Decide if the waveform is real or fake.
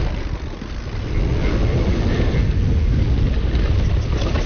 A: real